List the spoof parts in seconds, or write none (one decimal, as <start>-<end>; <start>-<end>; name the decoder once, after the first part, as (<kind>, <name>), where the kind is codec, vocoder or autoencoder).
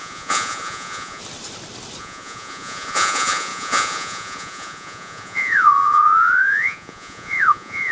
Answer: 0.0-1.2 (vocoder, Vocos); 2.0-7.9